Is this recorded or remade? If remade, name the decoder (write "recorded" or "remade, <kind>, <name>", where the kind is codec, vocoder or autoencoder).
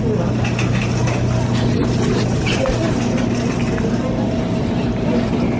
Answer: recorded